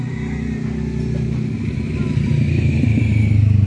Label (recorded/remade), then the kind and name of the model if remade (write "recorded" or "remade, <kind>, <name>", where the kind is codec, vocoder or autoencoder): recorded